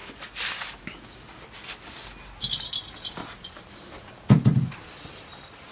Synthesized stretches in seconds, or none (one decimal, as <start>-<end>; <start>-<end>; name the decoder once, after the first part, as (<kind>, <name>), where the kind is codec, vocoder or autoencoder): none